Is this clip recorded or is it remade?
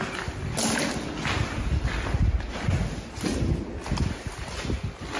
recorded